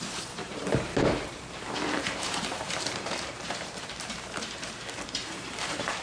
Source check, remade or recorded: remade